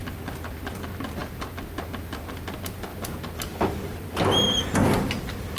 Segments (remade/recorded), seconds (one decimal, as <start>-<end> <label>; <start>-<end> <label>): 0.0-5.6 recorded